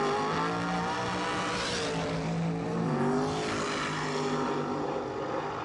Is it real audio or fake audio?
real